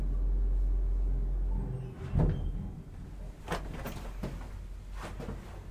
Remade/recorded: recorded